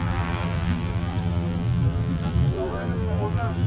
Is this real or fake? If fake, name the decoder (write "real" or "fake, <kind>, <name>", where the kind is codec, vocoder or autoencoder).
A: fake, vocoder, BigVGAN v2